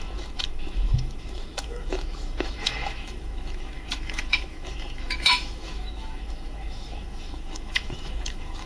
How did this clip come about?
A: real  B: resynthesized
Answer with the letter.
B